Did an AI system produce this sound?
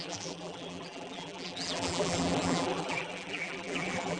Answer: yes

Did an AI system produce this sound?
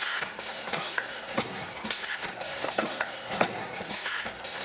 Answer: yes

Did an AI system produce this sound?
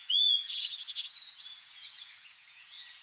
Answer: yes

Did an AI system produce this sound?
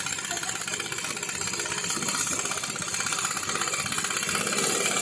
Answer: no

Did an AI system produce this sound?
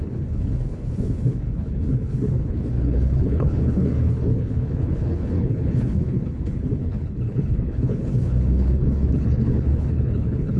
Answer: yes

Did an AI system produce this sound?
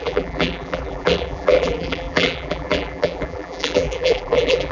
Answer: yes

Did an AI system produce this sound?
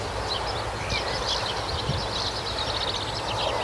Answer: no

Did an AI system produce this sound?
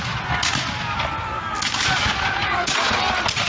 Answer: no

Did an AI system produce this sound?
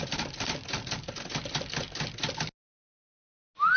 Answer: no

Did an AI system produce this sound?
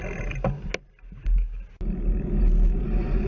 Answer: no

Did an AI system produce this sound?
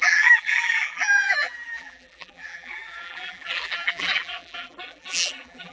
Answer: yes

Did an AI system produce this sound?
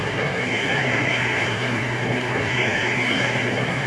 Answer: yes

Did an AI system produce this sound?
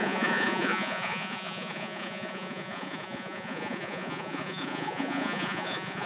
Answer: yes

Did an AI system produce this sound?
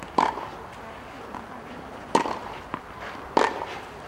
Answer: no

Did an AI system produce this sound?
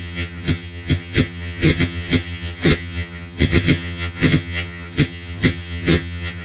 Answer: yes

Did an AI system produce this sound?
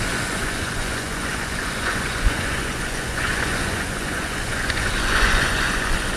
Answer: yes